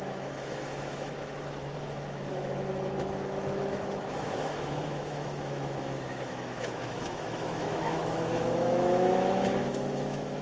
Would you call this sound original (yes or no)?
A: no